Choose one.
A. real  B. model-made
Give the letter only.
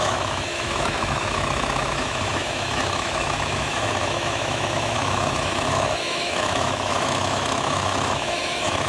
B